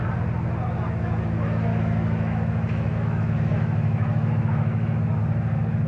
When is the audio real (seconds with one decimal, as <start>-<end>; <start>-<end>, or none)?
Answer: 0.0-1.7; 5.2-5.9